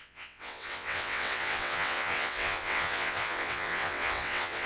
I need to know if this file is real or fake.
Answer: fake